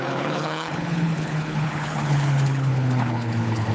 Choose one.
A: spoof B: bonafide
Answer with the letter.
A